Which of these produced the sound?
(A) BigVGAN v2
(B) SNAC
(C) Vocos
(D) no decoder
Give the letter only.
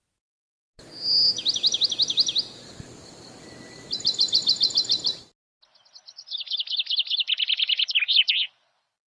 D